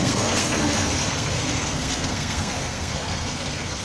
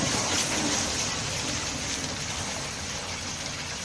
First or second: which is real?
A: second